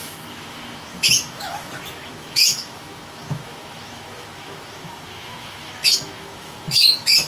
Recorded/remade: remade